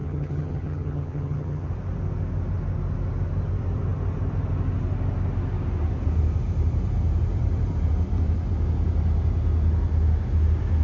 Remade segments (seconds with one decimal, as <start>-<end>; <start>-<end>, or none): 0.0-1.7